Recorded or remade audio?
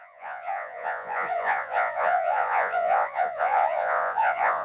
remade